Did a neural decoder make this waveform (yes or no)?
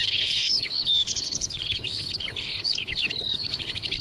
yes